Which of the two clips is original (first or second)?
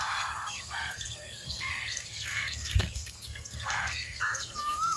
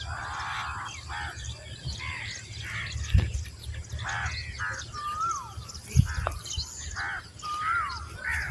second